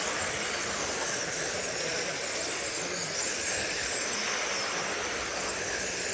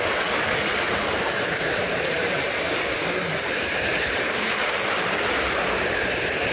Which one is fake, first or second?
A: second